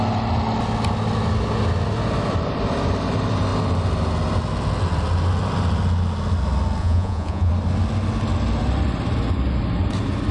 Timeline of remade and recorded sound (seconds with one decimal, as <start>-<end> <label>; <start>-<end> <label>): 0.0-6.8 recorded; 6.8-7.5 remade; 7.5-10.3 recorded